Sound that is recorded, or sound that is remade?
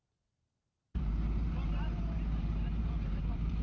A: remade